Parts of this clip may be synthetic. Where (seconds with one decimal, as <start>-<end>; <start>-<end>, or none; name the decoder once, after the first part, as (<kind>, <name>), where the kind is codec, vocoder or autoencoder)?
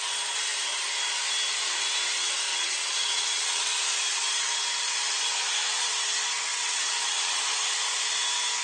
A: 2.5-3.7 (vocoder, WaveNeXt); 6.5-7.4